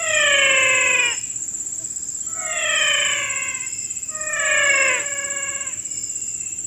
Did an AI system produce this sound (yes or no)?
no